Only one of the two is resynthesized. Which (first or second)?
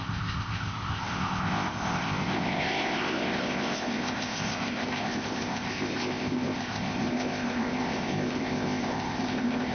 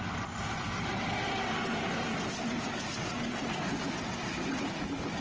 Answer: first